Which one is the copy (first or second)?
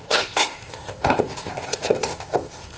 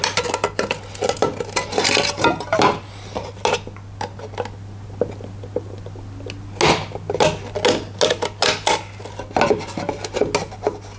first